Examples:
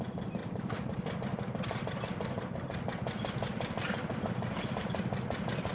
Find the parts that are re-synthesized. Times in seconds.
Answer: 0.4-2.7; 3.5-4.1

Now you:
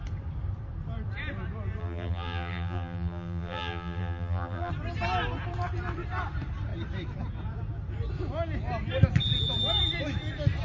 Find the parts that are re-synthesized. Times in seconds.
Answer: 1.8-4.7

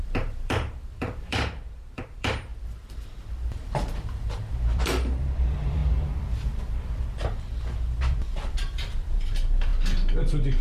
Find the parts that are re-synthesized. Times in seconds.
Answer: 0.0-5.8; 7.0-9.7

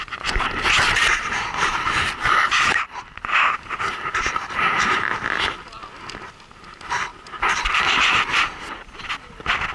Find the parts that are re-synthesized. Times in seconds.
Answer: 0.0-5.2; 7.1-8.6

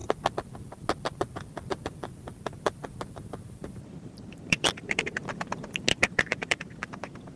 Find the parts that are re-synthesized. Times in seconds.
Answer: 3.1-5.2; 5.9-7.4

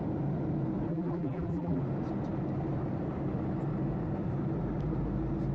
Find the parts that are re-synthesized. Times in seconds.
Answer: 0.9-1.8

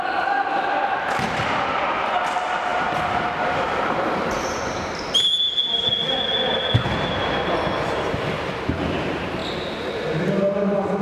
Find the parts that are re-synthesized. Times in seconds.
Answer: 2.7-7.1

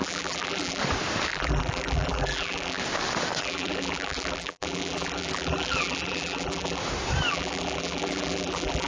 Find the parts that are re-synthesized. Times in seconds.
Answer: 0.0-0.8; 1.3-2.8; 3.4-6.8; 7.3-8.9